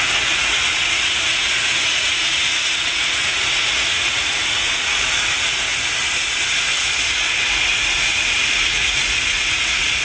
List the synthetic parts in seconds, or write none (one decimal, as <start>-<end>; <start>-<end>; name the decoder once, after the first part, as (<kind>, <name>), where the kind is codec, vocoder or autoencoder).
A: 0.0-5.7 (vocoder, Vocos); 6.5-10.0